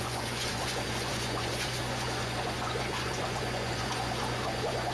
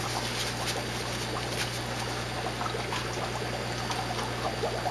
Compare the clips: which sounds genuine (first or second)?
second